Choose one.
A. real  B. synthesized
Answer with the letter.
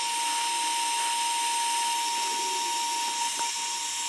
A